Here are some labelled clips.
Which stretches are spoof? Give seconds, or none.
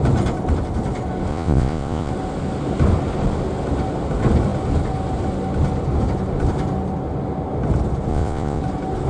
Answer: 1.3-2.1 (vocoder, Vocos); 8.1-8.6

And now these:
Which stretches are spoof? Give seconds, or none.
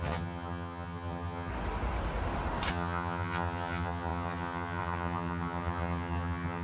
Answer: 0.0-1.5 (vocoder, HiFi-GAN); 2.7-6.6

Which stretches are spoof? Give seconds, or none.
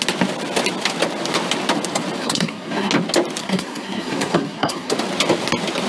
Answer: 2.2-2.9 (codec, SNAC); 3.4-4.9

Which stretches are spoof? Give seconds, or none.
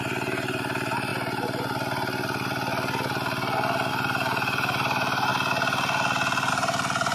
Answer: 0.0-1.1 (vocoder, BigVGAN v2); 3.9-5.3; 6.5-7.1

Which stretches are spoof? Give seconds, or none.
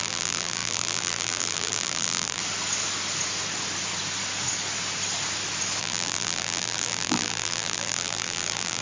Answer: 0.0-2.4 (vocoder, BigVGAN v2); 5.8-8.8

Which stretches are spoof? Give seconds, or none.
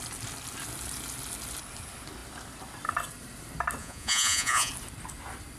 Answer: 3.8-4.7 (vocoder, Vocos)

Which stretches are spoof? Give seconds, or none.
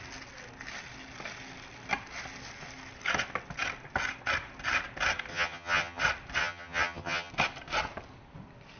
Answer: 5.3-6.0 (vocoder, HiFi-GAN); 6.4-7.3